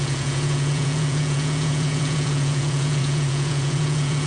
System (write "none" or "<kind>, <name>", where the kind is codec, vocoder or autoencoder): vocoder, Vocos